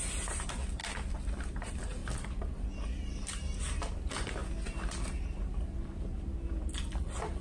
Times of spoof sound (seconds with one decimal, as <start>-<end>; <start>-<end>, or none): 0.0-0.8; 1.4-2.0; 3.1-4.4; 5.4-7.4